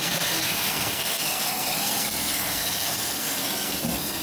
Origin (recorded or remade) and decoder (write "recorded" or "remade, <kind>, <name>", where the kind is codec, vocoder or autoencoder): remade, codec, SNAC